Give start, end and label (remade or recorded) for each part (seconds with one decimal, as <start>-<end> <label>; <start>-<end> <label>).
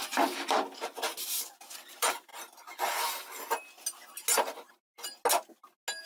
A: 0.0-1.2 recorded; 1.2-2.3 remade; 2.3-6.1 recorded